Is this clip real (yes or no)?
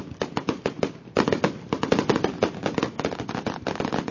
yes